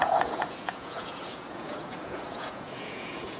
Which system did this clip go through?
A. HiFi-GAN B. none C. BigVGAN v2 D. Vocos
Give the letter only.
D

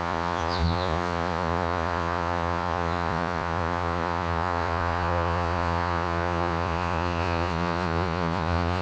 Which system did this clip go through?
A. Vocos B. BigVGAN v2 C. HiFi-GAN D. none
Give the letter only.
A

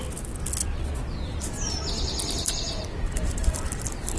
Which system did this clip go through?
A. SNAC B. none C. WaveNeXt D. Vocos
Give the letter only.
B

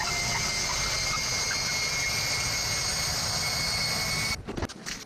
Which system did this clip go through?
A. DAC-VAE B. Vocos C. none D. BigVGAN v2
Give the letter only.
C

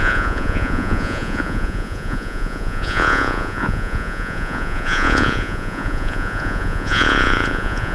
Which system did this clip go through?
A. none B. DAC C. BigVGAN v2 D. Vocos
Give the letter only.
D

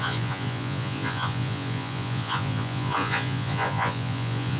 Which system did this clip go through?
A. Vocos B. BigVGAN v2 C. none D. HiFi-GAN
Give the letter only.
A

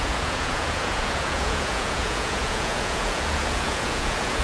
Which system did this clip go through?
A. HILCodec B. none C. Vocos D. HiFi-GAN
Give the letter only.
C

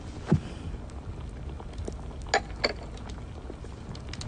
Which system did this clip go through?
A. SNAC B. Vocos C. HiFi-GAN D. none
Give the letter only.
D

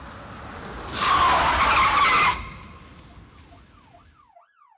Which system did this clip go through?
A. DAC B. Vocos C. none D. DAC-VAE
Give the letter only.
C